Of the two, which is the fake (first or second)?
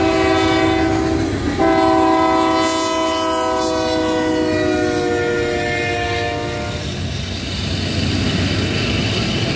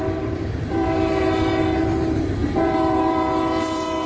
second